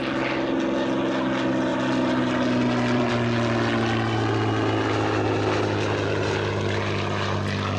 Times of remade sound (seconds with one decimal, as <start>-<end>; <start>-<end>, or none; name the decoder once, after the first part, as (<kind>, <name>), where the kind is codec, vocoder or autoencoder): 1.7-3.1 (vocoder, BigVGAN v2)